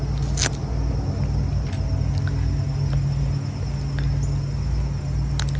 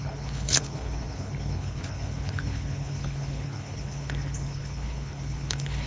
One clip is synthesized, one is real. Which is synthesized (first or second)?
second